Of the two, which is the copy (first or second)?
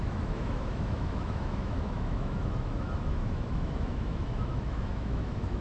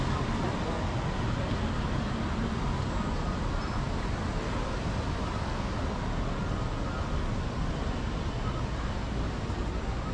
first